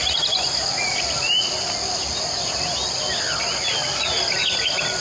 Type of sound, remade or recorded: recorded